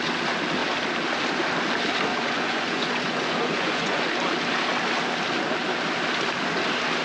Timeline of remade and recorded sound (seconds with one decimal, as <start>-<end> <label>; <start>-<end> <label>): 0.0-2.1 recorded; 2.1-4.1 remade; 4.1-7.0 recorded